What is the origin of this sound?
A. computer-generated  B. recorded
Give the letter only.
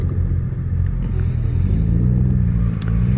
B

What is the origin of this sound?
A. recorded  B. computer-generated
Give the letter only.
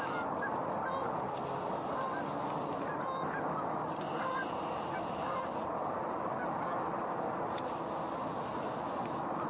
B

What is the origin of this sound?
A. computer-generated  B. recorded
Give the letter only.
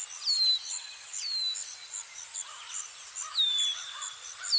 B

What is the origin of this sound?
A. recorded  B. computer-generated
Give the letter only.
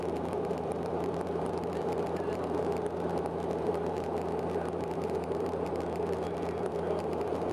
B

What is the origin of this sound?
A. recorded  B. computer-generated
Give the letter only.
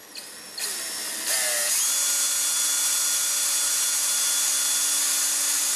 A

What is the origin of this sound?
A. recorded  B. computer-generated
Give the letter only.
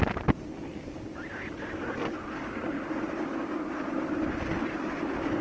A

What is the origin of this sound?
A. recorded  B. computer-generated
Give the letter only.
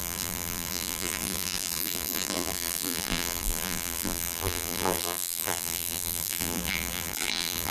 B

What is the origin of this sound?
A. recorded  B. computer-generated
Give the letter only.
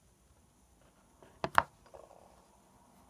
A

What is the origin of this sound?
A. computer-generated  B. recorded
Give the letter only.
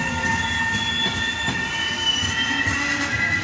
B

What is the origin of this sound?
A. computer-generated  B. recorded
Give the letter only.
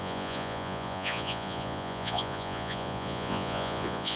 A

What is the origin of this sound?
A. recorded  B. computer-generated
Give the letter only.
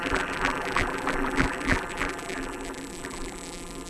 B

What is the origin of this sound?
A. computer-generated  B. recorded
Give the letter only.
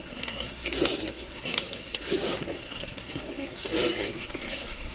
A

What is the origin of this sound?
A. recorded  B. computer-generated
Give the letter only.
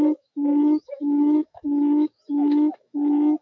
B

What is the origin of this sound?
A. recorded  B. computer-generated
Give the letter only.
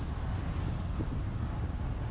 A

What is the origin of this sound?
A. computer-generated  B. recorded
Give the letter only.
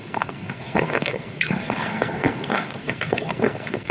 A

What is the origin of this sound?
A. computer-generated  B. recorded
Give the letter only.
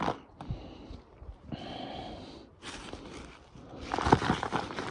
B